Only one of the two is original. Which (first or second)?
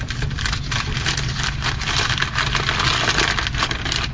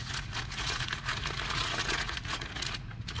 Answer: first